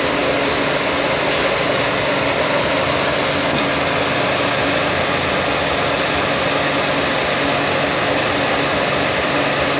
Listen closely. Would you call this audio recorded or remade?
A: recorded